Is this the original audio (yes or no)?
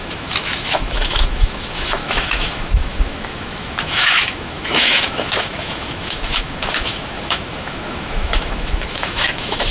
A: no